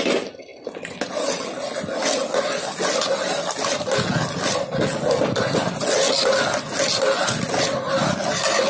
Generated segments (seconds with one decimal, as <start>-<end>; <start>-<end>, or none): none